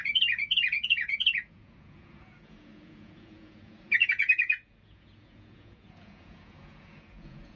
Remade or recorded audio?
remade